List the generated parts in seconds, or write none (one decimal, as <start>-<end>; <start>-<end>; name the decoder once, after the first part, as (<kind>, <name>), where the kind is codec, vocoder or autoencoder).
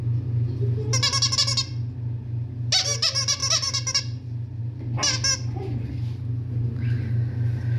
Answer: none